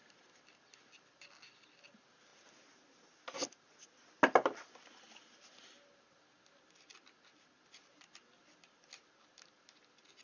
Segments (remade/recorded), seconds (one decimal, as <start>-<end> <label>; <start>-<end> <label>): 0.0-10.2 recorded